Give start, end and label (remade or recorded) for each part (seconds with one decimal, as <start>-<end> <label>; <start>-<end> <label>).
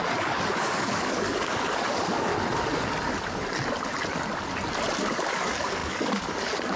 0.0-2.3 remade; 2.3-5.0 recorded; 5.0-6.8 remade